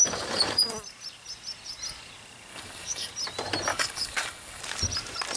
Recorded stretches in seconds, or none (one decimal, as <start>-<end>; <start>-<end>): 0.0-2.5; 3.1-3.7; 4.6-5.4